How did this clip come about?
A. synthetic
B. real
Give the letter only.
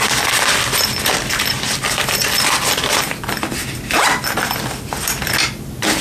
B